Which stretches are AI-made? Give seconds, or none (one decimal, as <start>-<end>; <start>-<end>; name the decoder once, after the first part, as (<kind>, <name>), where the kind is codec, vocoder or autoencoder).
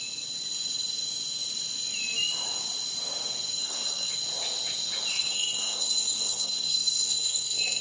3.6-4.1 (codec, SNAC); 5.1-7.8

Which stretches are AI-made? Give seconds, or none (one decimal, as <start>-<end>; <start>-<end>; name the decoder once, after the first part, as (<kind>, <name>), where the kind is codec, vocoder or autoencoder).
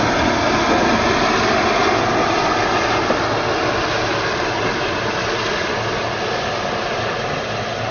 none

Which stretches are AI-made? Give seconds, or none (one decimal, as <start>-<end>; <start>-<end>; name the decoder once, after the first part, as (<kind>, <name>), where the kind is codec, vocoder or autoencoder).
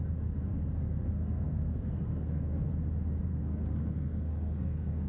0.5-2.7 (codec, SNAC); 3.3-5.1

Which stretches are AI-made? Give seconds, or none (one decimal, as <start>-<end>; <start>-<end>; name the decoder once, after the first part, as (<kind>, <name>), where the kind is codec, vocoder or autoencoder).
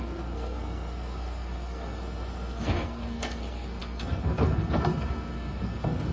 0.0-6.1 (codec, SNAC)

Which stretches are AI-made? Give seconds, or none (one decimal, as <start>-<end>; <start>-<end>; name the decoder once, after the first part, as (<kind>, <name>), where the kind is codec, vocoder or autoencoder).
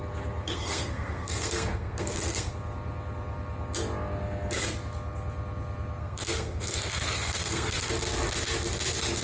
0.4-2.5 (codec, SNAC); 6.0-7.9